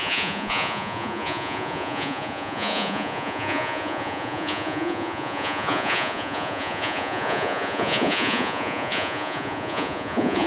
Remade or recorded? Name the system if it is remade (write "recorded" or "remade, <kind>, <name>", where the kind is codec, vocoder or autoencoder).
remade, vocoder, Vocos